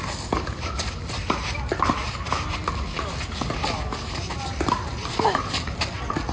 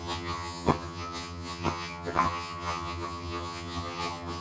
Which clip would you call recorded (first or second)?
first